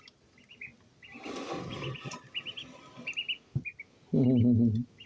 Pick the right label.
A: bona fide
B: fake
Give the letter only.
A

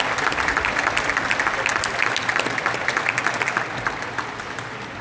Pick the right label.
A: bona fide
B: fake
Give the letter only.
A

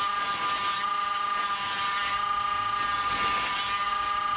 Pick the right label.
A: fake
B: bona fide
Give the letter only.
B